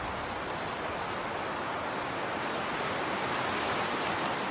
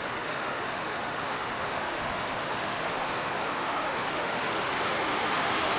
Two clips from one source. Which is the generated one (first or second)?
second